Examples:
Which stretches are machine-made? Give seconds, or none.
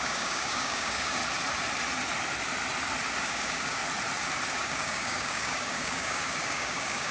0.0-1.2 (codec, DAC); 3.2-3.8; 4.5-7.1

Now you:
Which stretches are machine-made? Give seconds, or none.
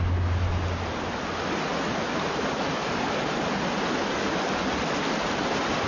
none